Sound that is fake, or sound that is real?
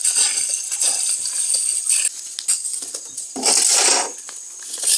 real